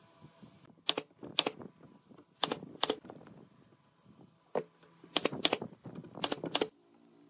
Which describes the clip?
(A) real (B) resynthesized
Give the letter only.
A